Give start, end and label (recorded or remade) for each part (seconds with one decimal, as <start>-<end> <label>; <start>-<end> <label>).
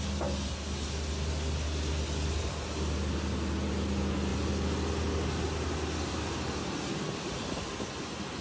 0.0-8.4 recorded